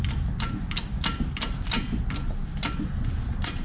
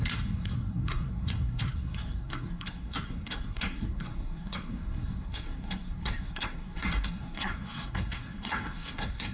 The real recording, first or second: first